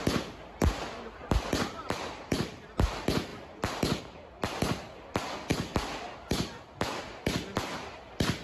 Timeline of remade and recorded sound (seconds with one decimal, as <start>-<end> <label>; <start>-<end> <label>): 0.0-1.2 recorded; 1.2-2.4 remade; 2.4-8.4 recorded